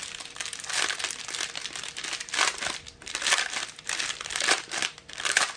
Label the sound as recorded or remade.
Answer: remade